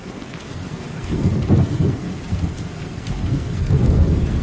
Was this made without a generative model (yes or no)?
no